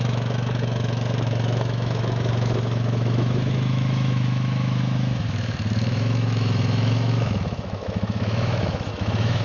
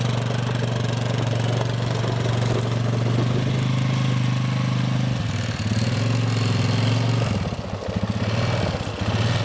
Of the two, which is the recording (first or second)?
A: second